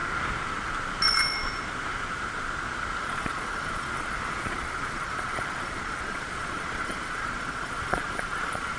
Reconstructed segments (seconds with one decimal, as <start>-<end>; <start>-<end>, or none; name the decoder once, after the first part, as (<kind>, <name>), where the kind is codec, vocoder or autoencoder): 3.0-8.8 (vocoder, Vocos)